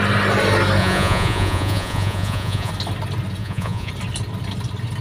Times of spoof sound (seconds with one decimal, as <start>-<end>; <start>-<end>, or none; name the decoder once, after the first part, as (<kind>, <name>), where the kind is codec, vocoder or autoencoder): 0.8-2.7 (vocoder, Vocos); 3.4-3.9